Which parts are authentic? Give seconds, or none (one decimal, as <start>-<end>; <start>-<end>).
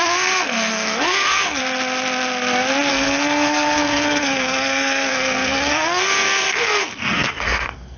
1.6-2.9